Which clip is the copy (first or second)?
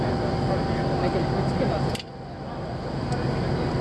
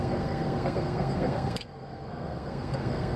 second